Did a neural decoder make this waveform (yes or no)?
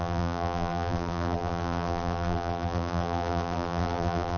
yes